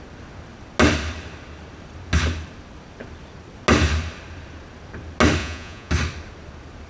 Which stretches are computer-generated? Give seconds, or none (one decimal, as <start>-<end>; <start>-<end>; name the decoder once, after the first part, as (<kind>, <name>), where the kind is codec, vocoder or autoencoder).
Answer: 5.4-5.9 (vocoder, Vocos)